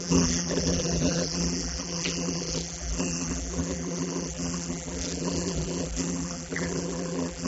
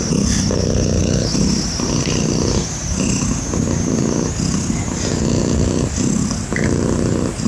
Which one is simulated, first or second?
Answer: first